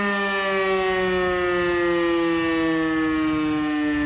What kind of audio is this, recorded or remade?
recorded